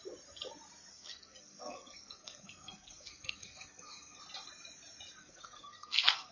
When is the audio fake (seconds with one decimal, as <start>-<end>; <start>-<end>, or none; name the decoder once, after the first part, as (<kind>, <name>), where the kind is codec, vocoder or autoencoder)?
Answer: 0.9-4.2 (codec, SNAC); 5.2-6.3